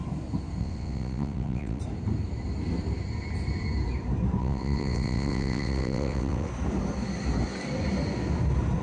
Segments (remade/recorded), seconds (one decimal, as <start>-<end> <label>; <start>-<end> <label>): 0.0-0.6 recorded; 0.6-1.8 remade; 1.8-4.4 recorded; 4.4-6.5 remade; 6.5-8.8 recorded